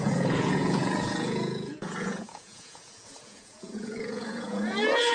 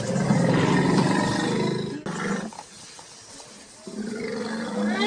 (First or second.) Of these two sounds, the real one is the second